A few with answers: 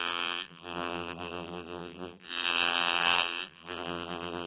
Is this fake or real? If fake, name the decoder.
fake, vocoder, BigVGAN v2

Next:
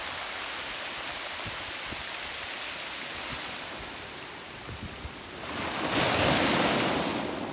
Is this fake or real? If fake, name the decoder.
real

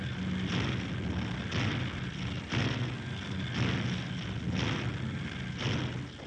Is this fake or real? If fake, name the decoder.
real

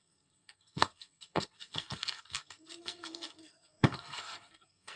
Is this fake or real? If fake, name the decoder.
fake, codec, SNAC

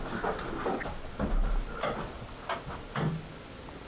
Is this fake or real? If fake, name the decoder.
real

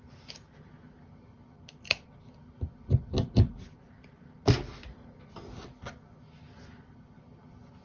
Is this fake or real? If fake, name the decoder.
real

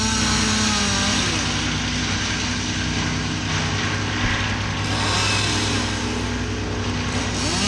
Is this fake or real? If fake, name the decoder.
real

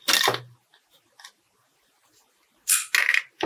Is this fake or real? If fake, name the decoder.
real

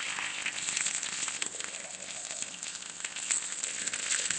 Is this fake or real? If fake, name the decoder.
fake, codec, ZipCodec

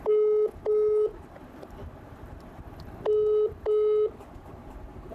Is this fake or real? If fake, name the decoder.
real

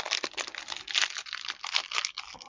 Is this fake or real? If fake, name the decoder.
real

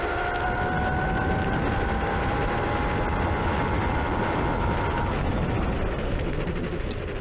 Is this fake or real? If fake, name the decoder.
real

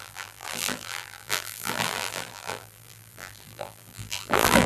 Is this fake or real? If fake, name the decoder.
fake, vocoder, BigVGAN v2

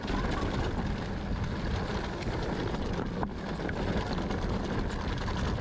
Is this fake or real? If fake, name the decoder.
real